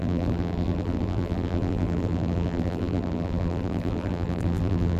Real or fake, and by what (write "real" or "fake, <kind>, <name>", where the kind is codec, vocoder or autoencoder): fake, vocoder, BigVGAN v2